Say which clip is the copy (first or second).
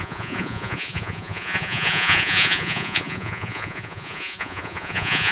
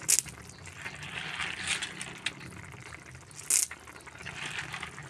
first